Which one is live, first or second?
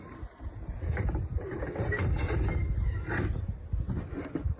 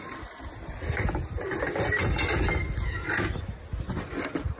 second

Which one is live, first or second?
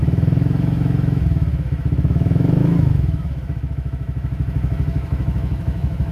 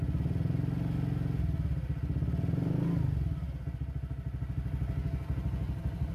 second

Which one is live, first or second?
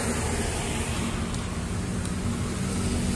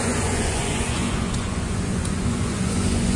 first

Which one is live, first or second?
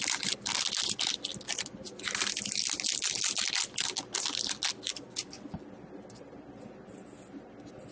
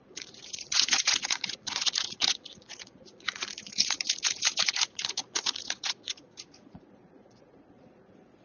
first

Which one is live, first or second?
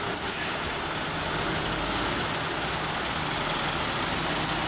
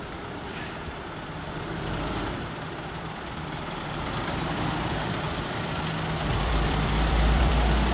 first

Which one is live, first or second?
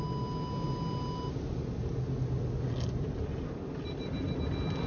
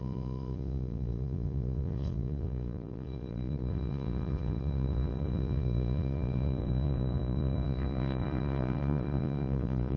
first